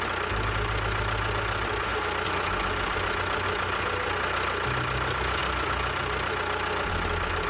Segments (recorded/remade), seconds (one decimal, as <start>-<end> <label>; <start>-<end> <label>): 0.0-7.5 recorded